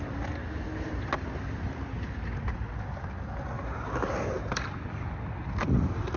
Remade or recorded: recorded